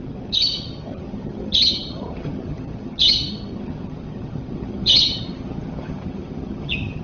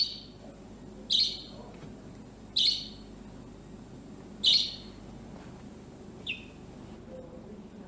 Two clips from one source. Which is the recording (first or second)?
second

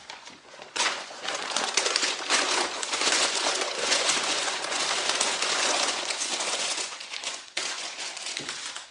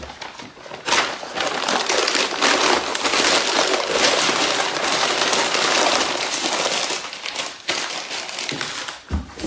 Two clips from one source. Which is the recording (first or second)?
second